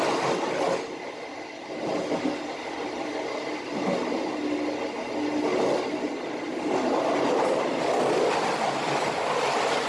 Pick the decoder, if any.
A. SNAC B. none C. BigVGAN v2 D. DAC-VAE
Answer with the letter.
B